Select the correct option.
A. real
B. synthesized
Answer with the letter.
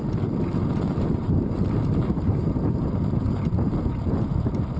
A